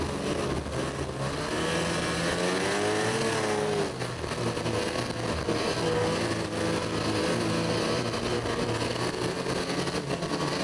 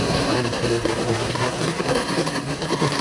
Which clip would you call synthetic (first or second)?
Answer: second